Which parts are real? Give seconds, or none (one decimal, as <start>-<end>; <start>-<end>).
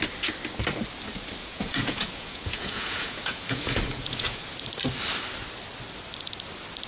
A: 0.0-1.4; 4.5-6.9